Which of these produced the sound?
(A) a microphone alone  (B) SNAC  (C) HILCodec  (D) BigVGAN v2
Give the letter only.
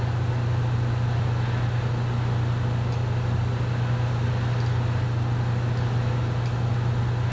A